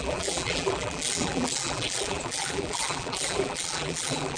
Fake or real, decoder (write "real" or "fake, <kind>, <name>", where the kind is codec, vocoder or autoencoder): fake, vocoder, BigVGAN v2